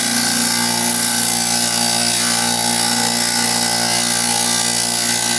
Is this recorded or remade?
recorded